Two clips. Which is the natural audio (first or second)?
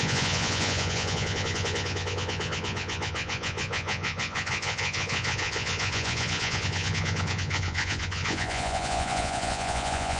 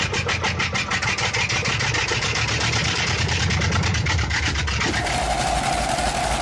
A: second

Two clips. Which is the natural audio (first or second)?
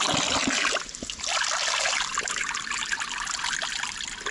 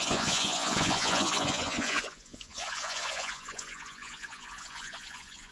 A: first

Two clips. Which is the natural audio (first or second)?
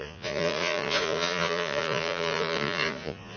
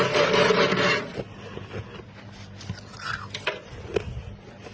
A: second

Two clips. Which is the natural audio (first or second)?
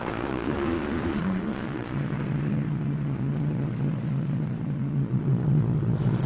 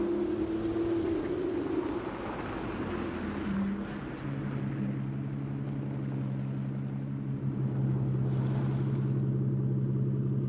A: second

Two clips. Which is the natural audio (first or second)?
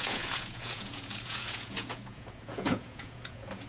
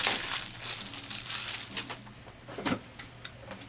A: second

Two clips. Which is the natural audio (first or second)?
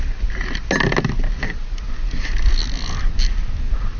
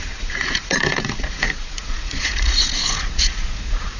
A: first